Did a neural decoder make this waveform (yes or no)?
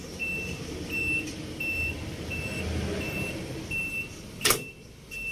yes